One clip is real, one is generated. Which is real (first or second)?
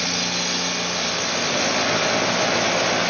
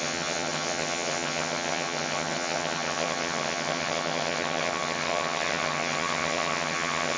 first